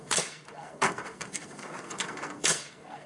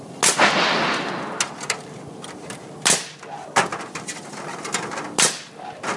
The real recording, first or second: second